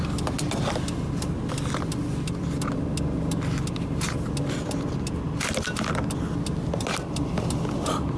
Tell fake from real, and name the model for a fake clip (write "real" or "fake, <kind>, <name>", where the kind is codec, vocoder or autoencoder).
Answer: real